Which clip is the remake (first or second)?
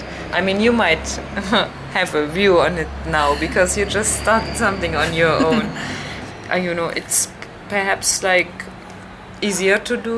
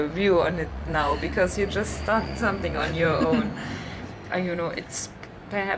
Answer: second